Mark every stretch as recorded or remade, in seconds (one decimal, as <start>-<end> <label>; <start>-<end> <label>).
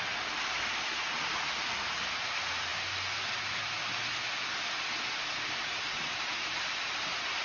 0.0-7.4 recorded